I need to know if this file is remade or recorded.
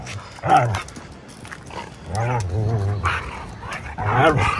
recorded